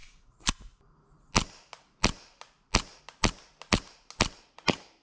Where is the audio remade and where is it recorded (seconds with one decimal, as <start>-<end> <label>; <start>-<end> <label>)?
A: 0.0-5.0 recorded